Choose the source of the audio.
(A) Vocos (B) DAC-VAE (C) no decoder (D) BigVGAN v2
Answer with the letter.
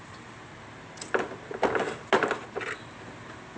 C